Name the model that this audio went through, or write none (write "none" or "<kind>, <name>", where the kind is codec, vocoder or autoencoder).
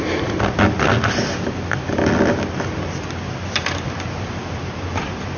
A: none